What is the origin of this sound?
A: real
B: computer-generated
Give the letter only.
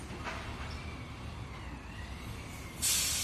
A